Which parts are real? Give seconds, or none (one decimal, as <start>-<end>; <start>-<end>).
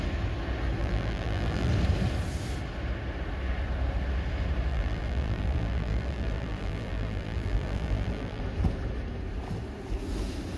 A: 0.0-0.8; 1.7-4.7; 8.4-10.6